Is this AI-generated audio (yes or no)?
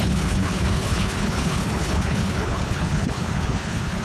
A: yes